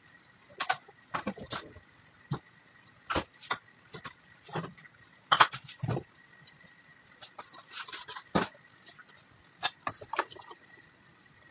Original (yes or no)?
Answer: yes